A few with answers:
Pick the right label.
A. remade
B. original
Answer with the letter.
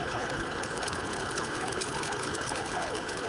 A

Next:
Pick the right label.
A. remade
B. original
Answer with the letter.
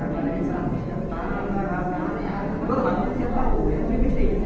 B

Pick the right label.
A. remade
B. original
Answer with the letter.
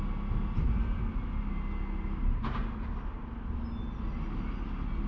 B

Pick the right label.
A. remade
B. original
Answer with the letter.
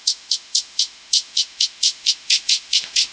A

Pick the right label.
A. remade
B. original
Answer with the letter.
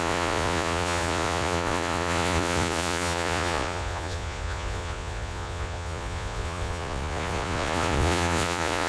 A